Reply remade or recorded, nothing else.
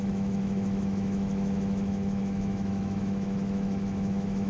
remade